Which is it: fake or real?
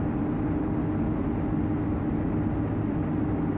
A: real